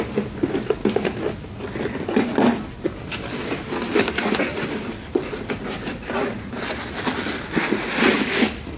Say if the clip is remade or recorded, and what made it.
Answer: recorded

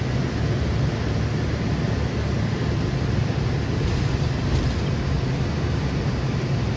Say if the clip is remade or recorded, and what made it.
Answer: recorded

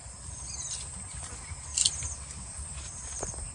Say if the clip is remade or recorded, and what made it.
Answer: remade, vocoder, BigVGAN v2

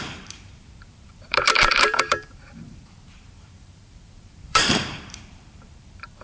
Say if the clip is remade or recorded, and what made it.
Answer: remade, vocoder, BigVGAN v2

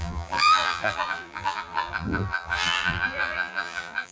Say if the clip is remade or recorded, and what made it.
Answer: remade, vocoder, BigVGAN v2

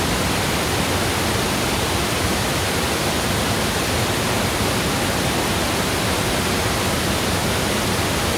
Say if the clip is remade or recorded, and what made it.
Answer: recorded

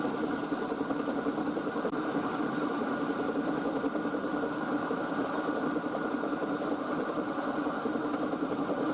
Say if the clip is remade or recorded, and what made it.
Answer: remade, vocoder, BigVGAN v2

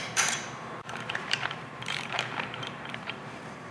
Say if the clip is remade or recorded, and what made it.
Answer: remade, vocoder, BigVGAN v2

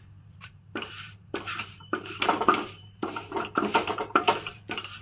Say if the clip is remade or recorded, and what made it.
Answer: remade, vocoder, BigVGAN v2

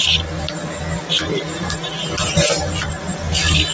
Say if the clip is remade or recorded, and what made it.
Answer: recorded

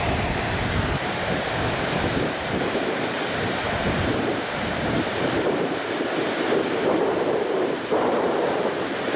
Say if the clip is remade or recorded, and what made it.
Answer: remade, vocoder, BigVGAN v2